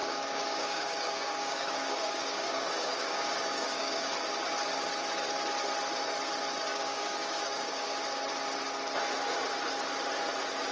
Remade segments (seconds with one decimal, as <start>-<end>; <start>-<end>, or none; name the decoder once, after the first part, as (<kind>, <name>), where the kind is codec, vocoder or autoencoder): 0.0-4.1 (codec, DAC); 6.7-8.0